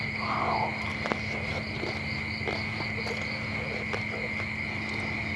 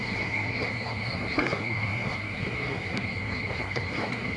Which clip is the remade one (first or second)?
second